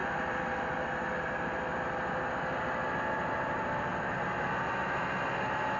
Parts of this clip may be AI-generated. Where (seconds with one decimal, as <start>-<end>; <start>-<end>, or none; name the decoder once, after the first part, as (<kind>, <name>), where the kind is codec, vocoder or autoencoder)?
none